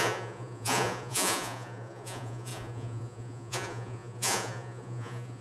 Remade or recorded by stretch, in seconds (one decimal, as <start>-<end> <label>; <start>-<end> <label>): 0.0-5.4 remade